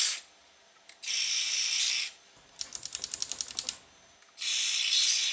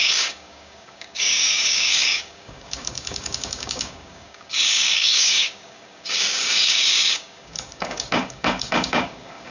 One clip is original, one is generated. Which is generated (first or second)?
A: second